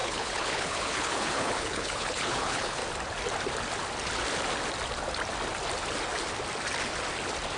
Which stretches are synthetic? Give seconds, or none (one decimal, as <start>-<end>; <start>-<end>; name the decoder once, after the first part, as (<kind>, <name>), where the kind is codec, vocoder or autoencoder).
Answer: 0.0-2.8 (codec, HILCodec)